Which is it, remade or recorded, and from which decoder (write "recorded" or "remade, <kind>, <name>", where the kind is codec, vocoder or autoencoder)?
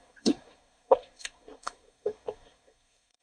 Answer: remade, codec, SNAC